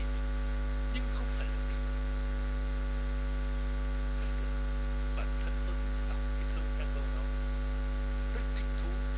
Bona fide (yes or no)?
yes